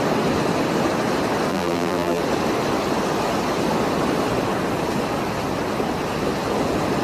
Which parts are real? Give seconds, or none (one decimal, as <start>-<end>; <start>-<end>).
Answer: 0.0-1.5; 2.2-7.0